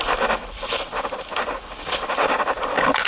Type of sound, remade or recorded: recorded